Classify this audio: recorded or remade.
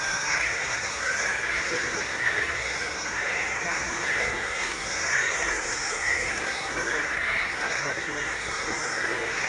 remade